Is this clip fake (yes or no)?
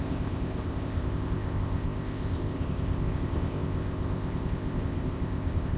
yes